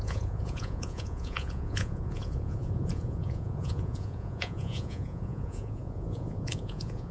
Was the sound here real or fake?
fake